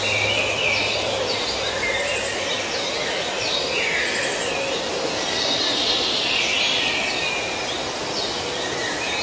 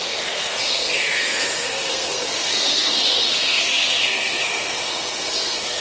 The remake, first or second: second